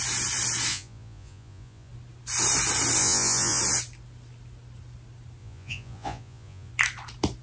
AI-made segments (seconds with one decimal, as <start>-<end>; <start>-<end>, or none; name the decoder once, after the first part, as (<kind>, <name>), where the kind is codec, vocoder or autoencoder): 0.7-1.9 (vocoder, Vocos); 3.0-3.6; 5.4-6.7